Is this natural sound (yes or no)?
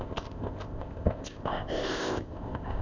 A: no